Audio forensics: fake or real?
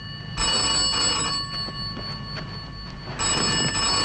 real